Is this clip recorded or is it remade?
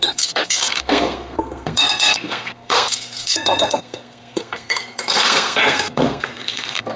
remade